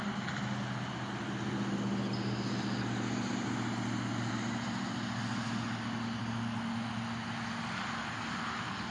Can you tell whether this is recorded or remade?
recorded